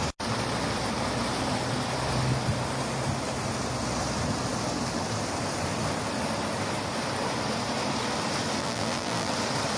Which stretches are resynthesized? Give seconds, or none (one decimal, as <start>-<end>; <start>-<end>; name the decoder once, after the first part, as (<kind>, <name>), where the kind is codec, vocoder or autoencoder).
8.6-9.3 (vocoder, BigVGAN v2)